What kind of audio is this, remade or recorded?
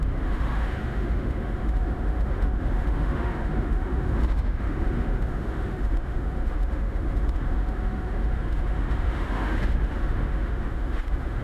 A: remade